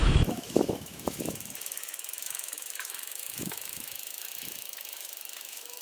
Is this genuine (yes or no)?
no